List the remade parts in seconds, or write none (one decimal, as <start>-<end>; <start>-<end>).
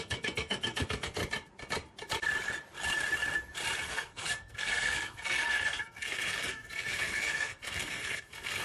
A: 0.0-1.2; 3.8-8.6